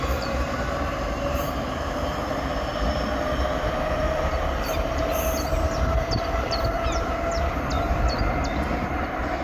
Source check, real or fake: fake